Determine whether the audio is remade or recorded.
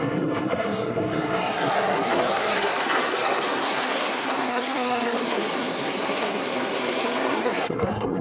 remade